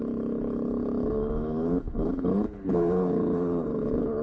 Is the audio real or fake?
fake